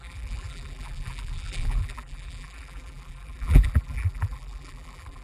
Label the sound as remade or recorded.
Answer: remade